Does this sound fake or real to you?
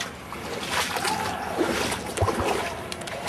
real